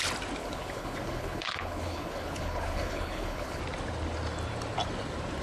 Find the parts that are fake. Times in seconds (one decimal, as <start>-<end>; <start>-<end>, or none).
0.4-3.6